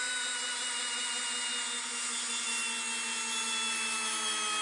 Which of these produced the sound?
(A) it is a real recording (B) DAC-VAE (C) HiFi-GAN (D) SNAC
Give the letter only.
A